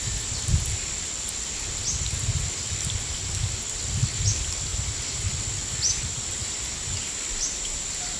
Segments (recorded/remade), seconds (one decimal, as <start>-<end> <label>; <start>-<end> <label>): 0.0-8.2 recorded